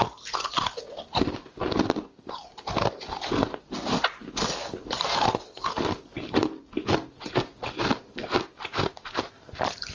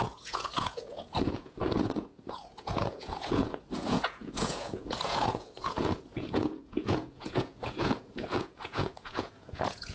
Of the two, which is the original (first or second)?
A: first